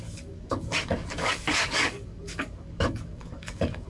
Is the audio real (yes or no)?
no